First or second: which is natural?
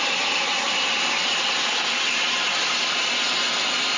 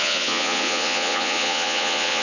first